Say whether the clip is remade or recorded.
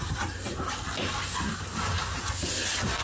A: recorded